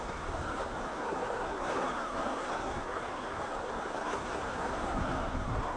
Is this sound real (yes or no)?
no